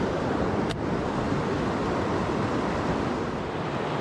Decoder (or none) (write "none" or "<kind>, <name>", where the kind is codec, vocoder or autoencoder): none